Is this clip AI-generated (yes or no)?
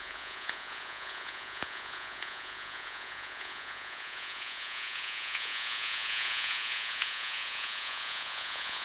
yes